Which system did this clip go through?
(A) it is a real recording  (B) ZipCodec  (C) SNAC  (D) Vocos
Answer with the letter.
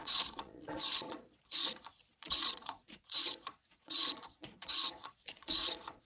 D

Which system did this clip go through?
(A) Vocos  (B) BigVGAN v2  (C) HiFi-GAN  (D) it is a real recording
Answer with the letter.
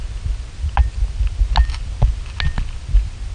D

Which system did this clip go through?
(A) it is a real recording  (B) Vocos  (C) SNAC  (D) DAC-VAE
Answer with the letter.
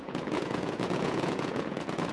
B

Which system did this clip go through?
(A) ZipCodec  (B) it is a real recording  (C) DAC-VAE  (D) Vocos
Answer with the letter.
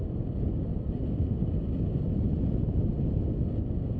B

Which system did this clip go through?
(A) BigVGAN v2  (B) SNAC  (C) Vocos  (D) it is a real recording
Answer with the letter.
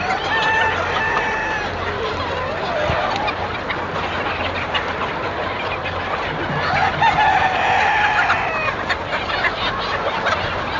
D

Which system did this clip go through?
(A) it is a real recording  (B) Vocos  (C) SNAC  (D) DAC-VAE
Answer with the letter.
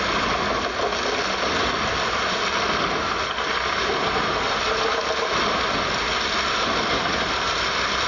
A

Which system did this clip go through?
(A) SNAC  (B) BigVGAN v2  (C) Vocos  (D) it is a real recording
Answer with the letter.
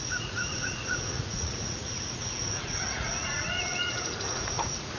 C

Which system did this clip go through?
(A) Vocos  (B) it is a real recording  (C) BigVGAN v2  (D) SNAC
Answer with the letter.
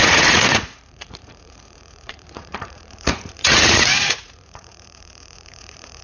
A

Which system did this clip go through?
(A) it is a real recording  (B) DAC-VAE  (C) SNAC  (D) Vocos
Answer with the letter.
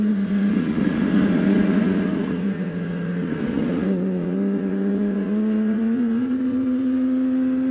D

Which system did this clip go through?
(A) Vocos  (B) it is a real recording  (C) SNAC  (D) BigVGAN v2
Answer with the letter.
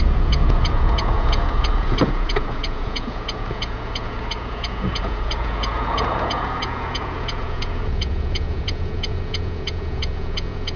A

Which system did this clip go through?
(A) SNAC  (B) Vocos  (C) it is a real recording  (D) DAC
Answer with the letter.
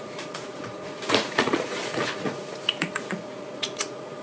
B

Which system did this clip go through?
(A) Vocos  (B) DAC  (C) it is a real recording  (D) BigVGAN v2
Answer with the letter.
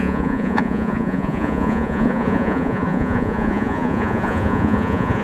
A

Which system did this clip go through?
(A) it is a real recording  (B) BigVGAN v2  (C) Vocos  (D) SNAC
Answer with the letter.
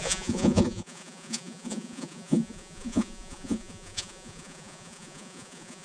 C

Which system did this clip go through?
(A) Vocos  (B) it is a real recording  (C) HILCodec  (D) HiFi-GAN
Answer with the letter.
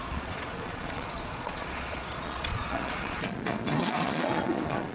A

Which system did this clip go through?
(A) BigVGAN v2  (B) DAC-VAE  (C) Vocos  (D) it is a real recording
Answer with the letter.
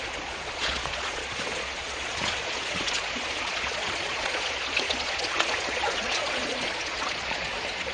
C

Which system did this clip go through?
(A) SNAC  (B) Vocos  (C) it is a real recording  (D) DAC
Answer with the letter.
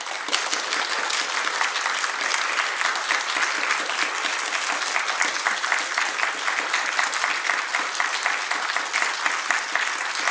C